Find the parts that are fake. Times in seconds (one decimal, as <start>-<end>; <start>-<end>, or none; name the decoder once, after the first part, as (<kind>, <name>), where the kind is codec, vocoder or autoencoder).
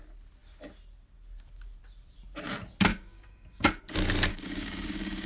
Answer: 2.9-3.8 (codec, DAC); 4.3-5.3